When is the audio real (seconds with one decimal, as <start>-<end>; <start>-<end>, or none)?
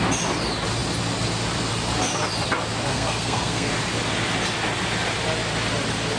0.0-2.9; 3.7-6.2